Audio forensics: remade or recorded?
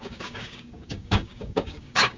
remade